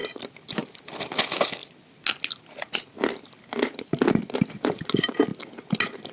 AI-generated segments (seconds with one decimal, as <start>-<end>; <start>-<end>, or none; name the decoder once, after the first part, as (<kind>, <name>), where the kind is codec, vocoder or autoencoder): none